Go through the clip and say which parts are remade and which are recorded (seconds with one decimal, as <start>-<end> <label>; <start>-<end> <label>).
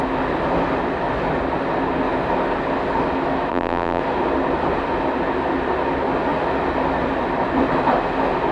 0.0-3.5 recorded; 3.5-4.0 remade; 4.0-8.5 recorded